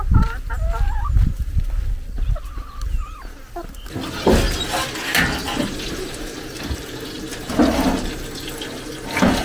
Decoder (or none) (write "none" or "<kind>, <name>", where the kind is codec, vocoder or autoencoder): none